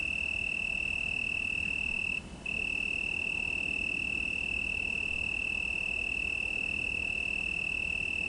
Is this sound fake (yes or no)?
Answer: no